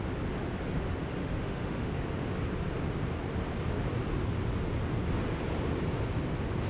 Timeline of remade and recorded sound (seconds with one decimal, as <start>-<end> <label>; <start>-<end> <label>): 0.0-1.2 recorded; 1.2-1.9 remade; 1.9-6.7 recorded